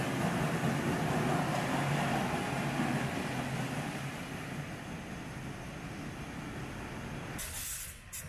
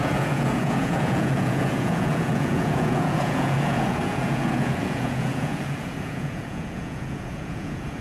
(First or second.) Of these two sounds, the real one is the first